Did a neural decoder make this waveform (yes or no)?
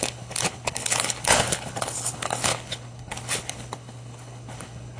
yes